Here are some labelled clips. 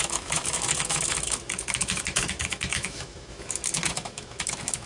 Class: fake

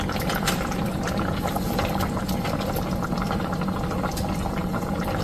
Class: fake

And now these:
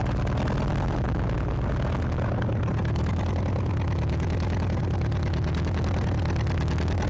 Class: real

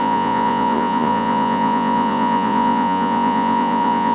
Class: fake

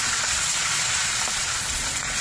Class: fake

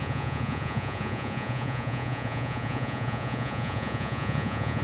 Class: fake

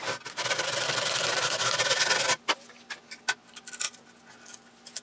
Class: real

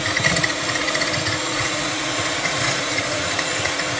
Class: fake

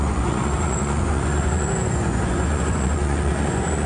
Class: fake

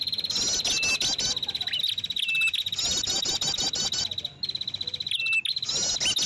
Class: real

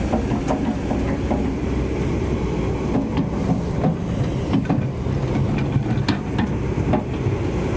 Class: real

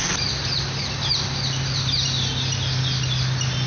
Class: real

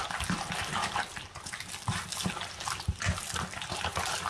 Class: real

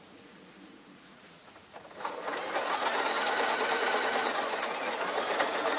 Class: fake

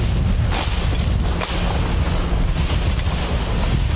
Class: real